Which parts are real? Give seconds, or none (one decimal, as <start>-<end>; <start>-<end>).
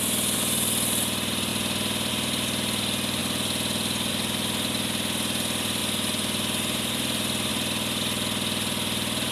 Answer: 0.0-1.5; 2.1-9.3